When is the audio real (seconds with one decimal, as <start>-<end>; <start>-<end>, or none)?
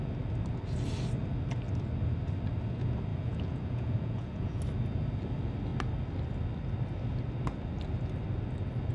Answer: 0.0-3.1; 4.6-8.9